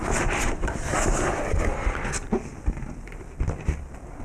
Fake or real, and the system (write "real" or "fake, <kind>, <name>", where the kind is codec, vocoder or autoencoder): real